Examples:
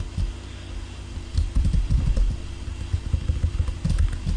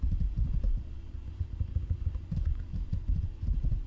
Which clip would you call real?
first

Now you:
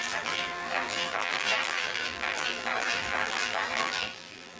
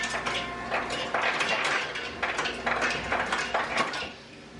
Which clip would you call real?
second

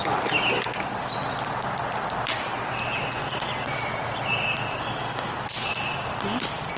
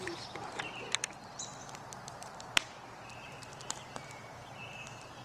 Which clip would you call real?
first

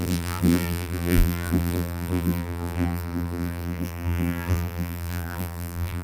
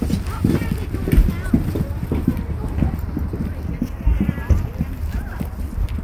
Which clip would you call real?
second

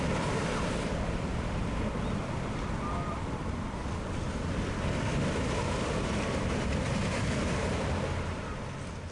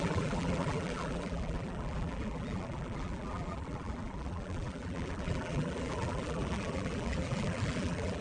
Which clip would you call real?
first